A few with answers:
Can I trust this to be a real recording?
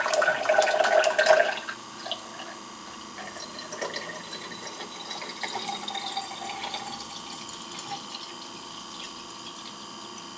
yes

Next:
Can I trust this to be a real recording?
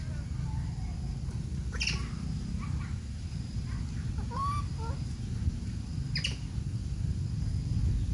yes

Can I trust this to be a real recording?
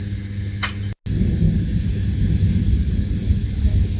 yes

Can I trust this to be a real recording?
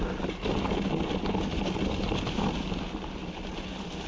yes